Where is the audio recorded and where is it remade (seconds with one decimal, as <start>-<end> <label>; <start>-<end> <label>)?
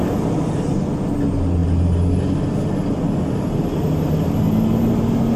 0.0-5.4 recorded